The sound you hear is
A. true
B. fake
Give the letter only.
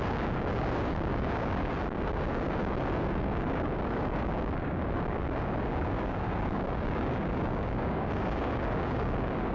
B